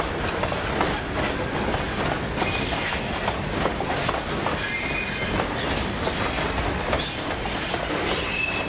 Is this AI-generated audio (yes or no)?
no